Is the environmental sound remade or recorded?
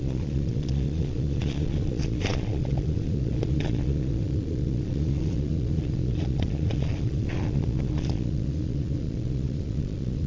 remade